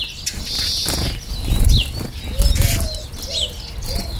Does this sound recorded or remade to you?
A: recorded